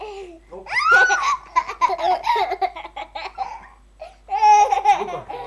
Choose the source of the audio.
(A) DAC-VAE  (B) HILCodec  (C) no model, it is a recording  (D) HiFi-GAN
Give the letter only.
C